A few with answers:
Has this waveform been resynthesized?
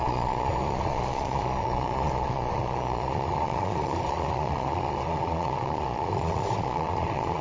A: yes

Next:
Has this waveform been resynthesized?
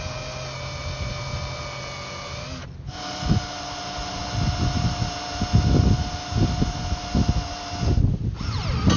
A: no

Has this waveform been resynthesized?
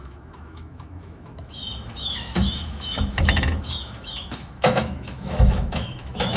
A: yes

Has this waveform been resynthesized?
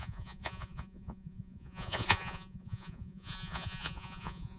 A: yes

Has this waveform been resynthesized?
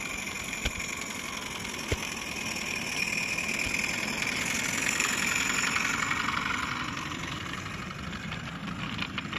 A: no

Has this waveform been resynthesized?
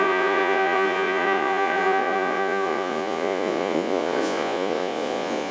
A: yes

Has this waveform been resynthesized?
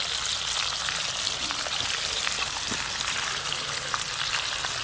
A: yes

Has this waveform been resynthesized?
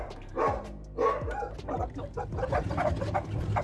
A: no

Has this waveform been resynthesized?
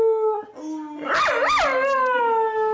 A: no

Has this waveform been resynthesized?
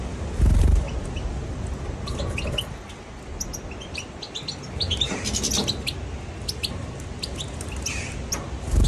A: no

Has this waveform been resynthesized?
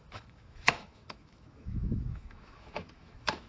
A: yes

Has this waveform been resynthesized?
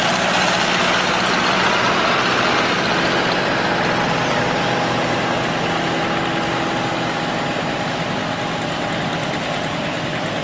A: no